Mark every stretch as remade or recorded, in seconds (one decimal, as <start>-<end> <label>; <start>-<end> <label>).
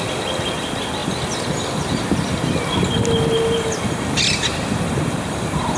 0.0-5.8 recorded